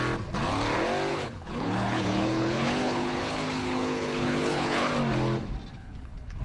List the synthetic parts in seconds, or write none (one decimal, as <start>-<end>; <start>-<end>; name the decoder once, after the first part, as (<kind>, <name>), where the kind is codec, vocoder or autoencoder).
1.1-4.9 (codec, HILCodec); 5.7-6.4